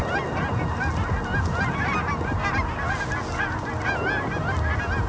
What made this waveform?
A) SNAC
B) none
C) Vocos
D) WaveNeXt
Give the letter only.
B